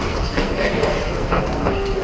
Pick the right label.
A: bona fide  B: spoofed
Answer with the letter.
B